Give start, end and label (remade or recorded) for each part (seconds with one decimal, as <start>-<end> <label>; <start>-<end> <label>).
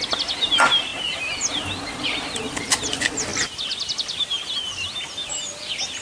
0.0-6.0 recorded